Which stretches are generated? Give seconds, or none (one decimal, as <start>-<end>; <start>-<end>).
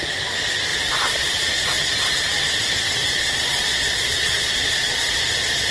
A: 0.7-1.8; 3.0-5.2